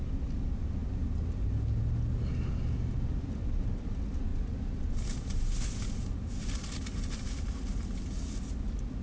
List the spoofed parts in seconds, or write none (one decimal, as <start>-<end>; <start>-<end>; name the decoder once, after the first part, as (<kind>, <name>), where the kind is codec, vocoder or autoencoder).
none